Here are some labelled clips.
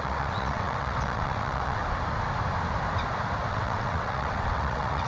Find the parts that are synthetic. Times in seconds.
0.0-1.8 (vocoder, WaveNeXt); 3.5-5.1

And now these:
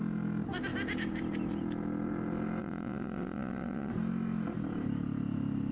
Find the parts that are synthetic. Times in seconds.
2.6-3.9 (vocoder, WaveNeXt)

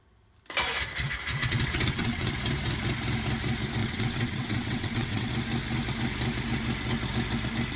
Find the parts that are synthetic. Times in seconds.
1.4-2.3 (vocoder, WaveNeXt); 3.8-5.3

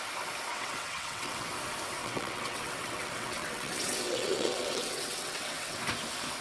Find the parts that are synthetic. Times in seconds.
0.5-1.5 (vocoder, WaveNeXt); 2.0-5.8